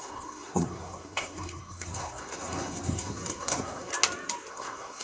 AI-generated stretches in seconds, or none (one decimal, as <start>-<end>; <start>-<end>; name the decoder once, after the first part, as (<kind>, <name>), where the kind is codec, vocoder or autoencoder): 0.0-3.9 (codec, SNAC); 4.5-5.0